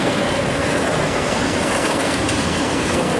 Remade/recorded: remade